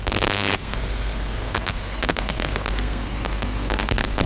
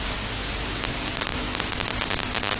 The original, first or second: second